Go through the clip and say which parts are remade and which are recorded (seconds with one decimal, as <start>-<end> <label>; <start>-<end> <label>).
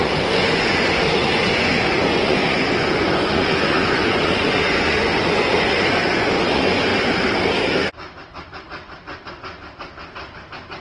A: 0.0-6.9 remade; 6.9-10.8 recorded